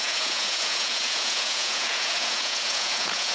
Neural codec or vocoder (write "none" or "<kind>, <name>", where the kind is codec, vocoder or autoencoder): vocoder, Vocos